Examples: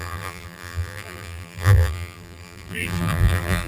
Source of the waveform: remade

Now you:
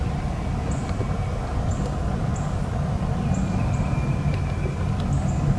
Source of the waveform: recorded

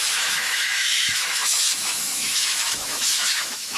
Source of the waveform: remade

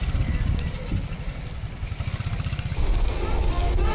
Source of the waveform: recorded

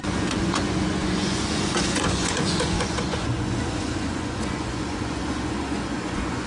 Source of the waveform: remade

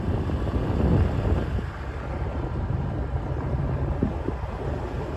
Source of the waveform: recorded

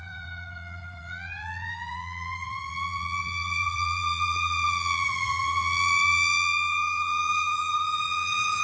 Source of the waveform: remade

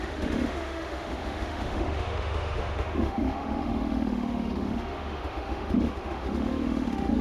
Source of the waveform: remade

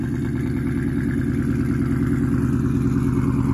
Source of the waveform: recorded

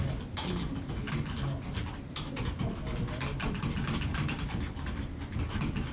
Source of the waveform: recorded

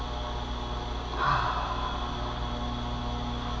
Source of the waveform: recorded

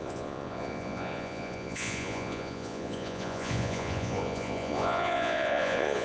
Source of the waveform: remade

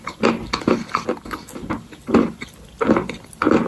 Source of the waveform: recorded